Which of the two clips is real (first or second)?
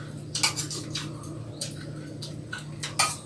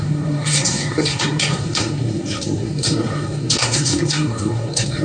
first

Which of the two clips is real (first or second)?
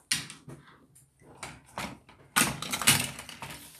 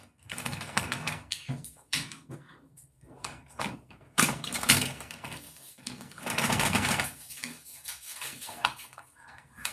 first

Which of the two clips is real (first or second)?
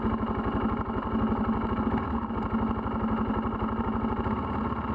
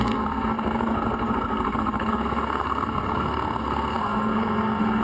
first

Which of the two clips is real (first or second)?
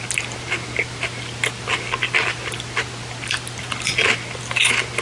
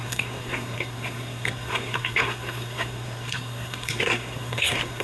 first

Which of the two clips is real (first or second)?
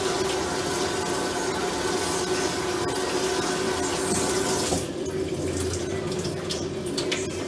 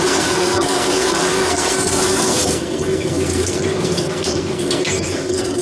first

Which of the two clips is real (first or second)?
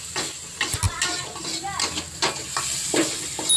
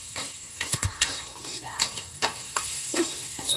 first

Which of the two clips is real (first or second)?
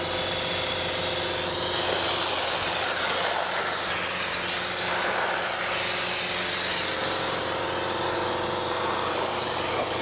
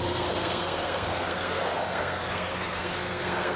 first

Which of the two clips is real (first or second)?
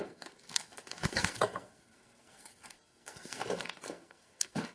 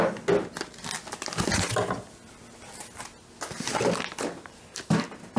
second